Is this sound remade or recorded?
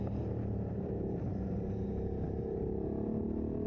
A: remade